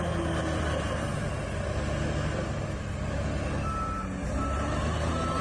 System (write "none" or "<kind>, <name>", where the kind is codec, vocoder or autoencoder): none